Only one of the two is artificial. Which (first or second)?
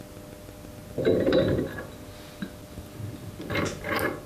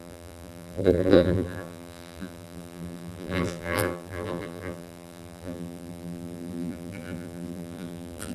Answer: second